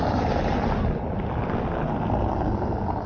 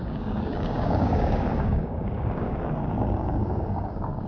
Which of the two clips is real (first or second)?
first